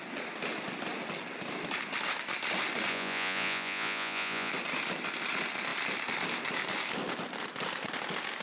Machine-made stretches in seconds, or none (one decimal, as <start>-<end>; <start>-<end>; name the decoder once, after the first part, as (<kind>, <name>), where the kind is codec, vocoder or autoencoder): 2.9-4.5 (vocoder, Vocos)